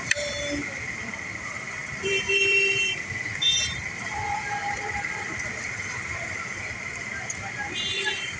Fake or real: fake